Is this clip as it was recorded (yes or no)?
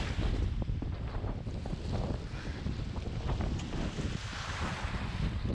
yes